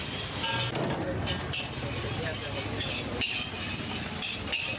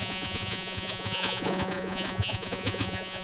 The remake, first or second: second